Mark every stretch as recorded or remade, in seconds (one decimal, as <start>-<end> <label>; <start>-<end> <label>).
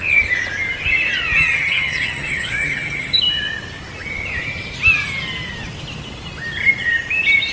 0.0-1.4 recorded; 1.4-3.2 remade; 3.2-7.5 recorded